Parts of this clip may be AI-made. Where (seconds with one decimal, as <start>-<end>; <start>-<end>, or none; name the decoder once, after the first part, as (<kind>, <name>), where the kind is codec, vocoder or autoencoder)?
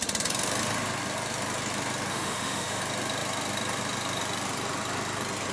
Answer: 2.1-2.8 (autoencoder, DAC-VAE)